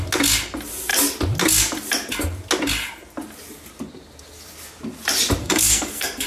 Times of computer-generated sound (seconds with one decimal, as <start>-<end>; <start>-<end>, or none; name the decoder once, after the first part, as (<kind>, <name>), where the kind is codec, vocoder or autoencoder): 5.4-6.3 (codec, SNAC)